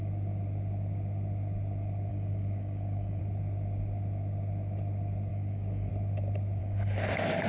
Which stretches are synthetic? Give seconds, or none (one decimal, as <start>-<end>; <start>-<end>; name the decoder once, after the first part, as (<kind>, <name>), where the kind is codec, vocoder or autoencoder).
2.1-3.2 (codec, DAC); 5.3-5.9; 6.6-7.5